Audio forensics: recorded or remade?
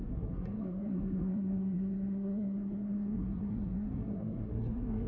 remade